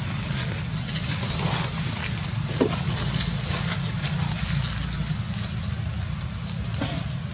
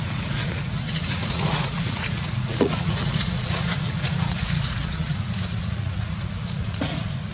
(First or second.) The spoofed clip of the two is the second